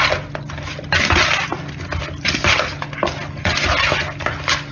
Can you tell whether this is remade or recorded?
recorded